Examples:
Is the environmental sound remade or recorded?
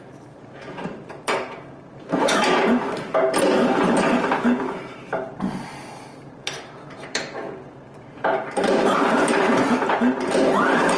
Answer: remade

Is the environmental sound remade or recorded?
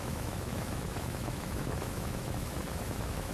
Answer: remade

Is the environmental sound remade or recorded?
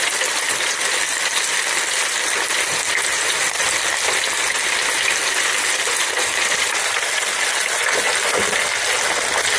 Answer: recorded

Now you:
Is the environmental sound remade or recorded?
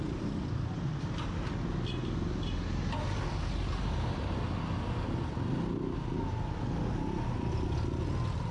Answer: recorded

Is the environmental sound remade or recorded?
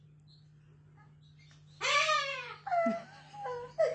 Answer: recorded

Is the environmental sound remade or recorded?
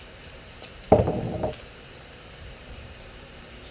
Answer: remade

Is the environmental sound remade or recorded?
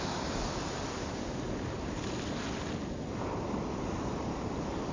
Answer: recorded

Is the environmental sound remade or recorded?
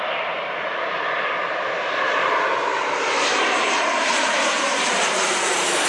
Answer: remade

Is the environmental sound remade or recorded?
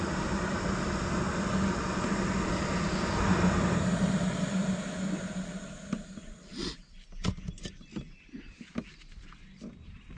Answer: recorded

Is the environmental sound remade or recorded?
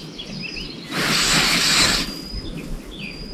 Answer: recorded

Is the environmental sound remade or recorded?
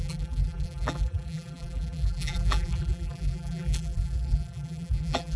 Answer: remade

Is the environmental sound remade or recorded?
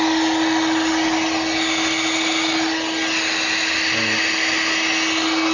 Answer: recorded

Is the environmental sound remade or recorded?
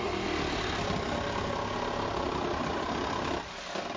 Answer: recorded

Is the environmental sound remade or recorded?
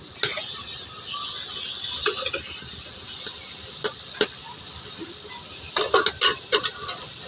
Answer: recorded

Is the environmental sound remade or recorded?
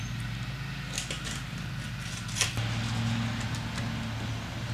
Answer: recorded